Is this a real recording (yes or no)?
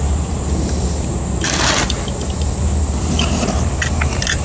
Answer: yes